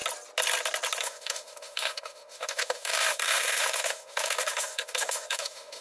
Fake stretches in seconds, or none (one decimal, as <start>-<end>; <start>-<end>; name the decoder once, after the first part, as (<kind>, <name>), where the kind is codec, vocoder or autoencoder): 1.0-5.8 (autoencoder, DAC-VAE)